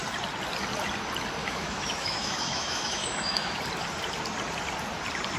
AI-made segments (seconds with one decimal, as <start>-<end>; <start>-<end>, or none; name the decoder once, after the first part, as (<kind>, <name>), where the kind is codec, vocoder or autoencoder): 1.4-3.6 (autoencoder, DAC-VAE)